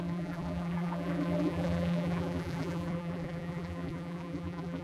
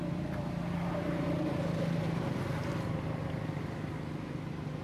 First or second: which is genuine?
second